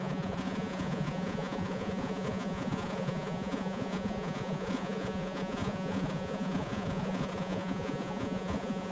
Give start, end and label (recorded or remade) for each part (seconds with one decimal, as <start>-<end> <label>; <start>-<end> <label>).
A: 0.0-8.9 remade